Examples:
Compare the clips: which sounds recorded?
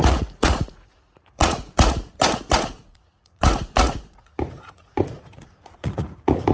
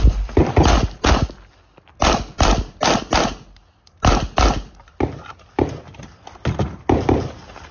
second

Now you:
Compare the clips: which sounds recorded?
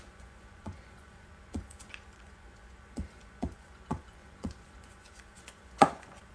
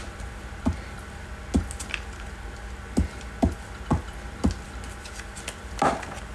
second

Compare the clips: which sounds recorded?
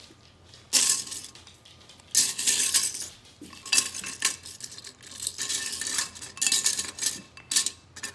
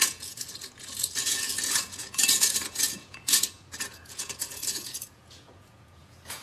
first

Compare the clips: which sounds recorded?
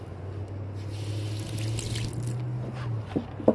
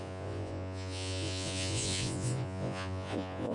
first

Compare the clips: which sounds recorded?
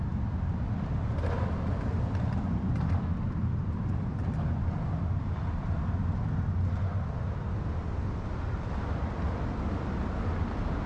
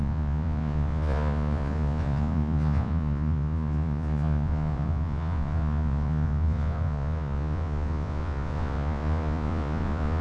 first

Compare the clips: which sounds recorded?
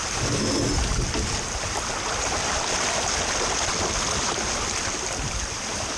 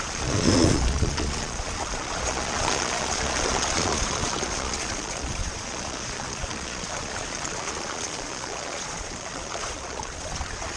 first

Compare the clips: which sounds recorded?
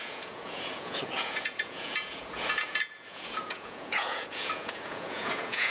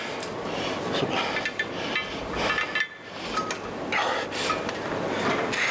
second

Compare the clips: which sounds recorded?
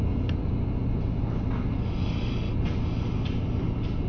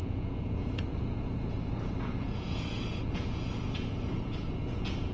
first